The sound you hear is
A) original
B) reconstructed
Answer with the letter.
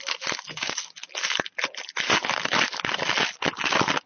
A